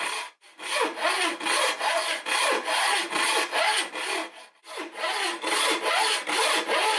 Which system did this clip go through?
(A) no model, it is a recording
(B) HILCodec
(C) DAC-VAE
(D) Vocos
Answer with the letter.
A